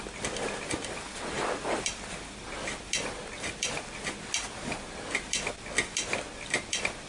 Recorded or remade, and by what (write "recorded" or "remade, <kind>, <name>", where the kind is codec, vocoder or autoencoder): recorded